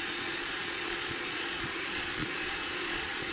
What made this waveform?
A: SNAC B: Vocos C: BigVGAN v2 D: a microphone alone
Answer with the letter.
B